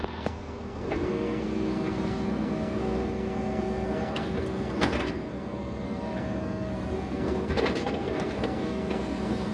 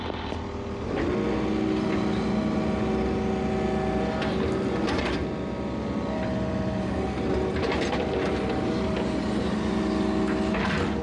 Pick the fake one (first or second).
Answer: first